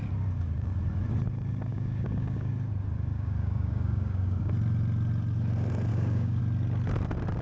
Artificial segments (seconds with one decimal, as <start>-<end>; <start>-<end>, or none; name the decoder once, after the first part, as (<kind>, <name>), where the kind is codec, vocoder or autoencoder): 1.7-2.5 (codec, DAC); 3.1-4.5; 5.9-6.4